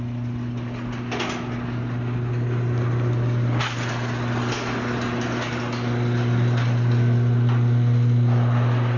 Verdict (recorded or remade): recorded